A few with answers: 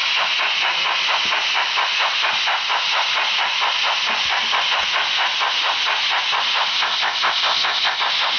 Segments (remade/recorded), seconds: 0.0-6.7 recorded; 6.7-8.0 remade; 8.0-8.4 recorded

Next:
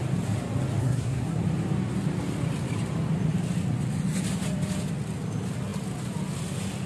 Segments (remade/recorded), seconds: 0.0-0.8 recorded; 0.8-1.4 remade; 1.4-6.9 recorded

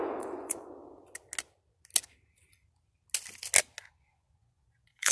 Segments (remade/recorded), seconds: 0.0-0.8 remade; 0.8-3.9 recorded; 3.9-5.1 remade

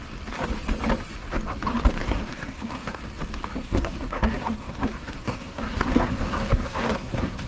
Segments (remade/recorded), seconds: 0.0-2.0 recorded; 2.0-3.0 remade; 3.0-3.6 recorded; 3.6-7.5 remade

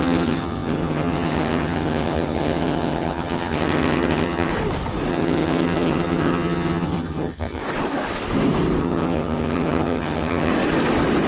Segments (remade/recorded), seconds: 0.0-4.5 remade; 4.5-5.1 recorded; 5.1-7.6 remade; 7.6-8.8 recorded; 8.8-10.5 remade; 10.5-11.3 recorded

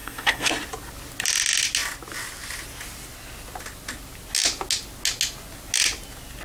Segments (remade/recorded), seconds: 0.0-0.5 remade; 0.5-6.4 recorded